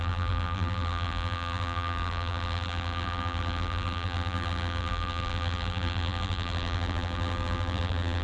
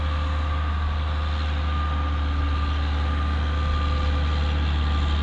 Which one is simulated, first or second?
first